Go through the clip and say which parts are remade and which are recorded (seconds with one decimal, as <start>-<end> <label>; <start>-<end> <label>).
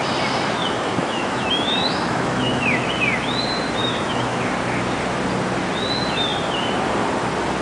0.0-0.6 recorded; 0.6-2.9 remade; 2.9-3.8 recorded; 3.8-4.4 remade; 4.4-7.6 recorded